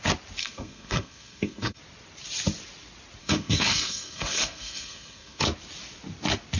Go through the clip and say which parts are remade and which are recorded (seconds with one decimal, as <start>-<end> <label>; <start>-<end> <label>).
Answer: 0.0-0.4 recorded; 0.4-1.8 remade; 1.8-3.2 recorded; 3.2-5.4 remade; 5.4-6.6 recorded